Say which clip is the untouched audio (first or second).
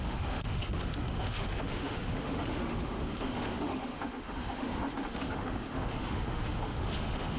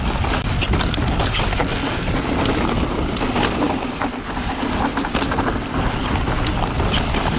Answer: second